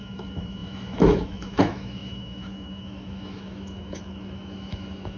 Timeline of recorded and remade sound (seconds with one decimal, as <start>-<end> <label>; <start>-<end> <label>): 0.0-5.2 remade